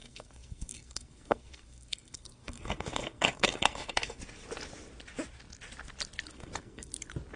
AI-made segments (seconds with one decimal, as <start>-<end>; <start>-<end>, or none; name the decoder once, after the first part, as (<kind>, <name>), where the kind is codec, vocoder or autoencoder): 0.0-4.2 (codec, SNAC); 6.3-6.9